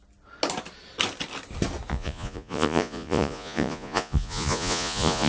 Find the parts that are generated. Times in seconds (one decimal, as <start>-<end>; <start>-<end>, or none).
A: 1.9-5.3